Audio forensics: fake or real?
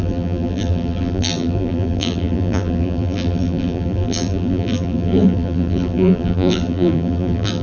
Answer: fake